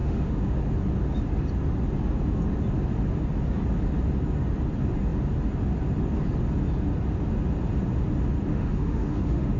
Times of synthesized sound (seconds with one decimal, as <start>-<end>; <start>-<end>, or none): 0.0-0.6; 8.5-9.6